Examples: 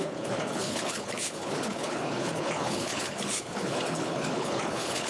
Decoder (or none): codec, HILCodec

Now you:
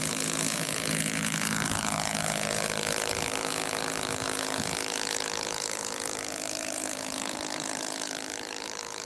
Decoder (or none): codec, HILCodec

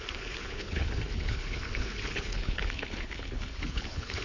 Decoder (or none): codec, HILCodec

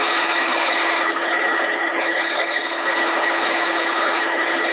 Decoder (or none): codec, HILCodec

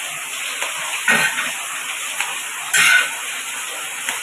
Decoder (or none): none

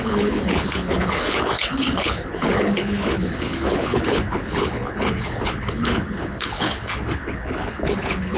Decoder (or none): codec, HILCodec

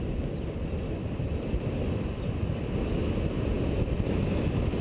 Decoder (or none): none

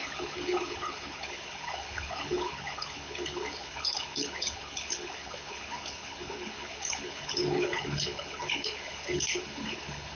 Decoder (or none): codec, HILCodec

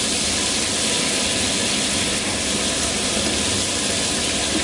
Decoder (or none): none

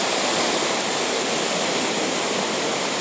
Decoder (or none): none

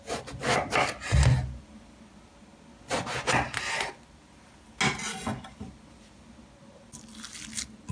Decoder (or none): none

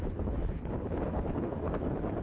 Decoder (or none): codec, HILCodec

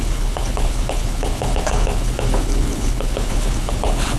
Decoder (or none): codec, HILCodec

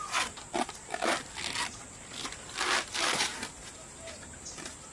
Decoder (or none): none